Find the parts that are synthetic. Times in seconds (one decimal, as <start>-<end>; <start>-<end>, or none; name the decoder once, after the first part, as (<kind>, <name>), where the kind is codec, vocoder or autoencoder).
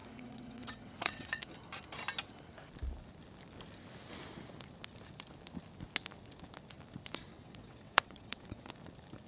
0.0-1.4 (vocoder, WaveNeXt); 7.3-8.7